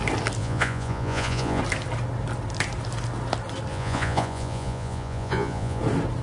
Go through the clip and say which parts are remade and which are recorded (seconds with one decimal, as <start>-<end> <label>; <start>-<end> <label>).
0.0-0.4 recorded; 0.4-1.6 remade; 1.6-3.7 recorded; 3.7-5.8 remade; 5.8-6.2 recorded